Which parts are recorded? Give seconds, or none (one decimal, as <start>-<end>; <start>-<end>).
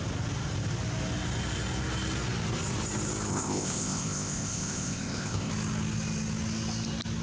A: 0.0-3.3; 5.5-7.2